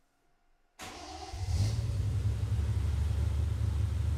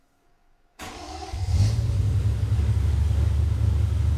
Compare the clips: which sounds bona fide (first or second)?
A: first